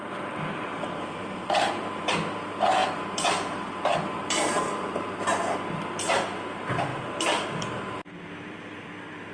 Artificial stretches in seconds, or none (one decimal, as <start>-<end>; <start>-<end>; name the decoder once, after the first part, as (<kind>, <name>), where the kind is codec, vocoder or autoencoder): 0.0-9.3 (vocoder, BigVGAN v2)